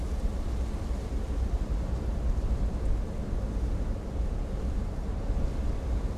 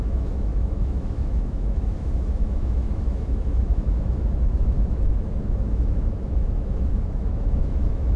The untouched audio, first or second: first